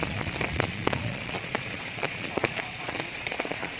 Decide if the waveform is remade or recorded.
remade